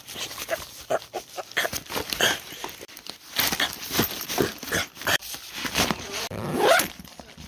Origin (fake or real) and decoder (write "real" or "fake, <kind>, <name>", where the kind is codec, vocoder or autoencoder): fake, vocoder, BigVGAN v2